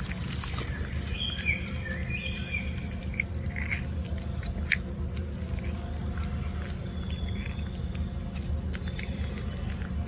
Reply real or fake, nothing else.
real